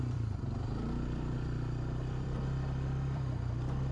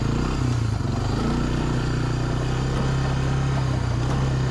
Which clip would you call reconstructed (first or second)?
first